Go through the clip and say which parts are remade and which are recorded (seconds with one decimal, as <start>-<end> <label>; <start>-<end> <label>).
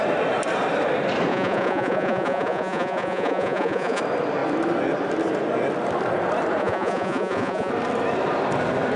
0.0-1.3 recorded; 1.3-4.0 remade; 4.0-6.6 recorded; 6.6-7.7 remade; 7.7-9.0 recorded